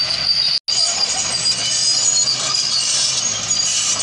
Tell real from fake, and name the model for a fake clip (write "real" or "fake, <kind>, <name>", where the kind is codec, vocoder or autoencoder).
real